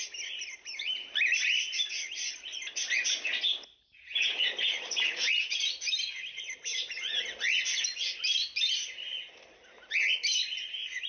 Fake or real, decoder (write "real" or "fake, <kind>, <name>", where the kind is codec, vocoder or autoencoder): real